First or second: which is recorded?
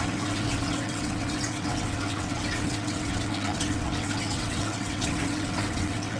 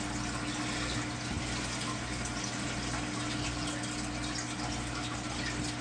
second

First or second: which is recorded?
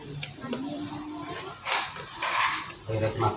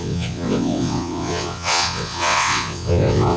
first